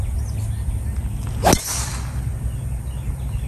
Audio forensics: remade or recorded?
recorded